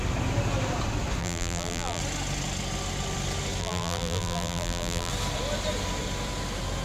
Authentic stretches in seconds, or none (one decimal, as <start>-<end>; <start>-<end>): 0.0-1.2; 2.0-3.6; 5.1-6.8